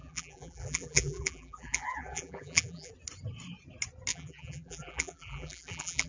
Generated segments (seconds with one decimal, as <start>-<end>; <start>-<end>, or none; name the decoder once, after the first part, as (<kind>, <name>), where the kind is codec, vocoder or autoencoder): 0.0-2.9 (vocoder, BigVGAN v2); 4.1-6.1